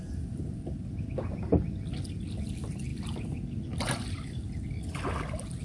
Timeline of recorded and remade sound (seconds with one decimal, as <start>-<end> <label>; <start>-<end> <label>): 0.0-5.6 recorded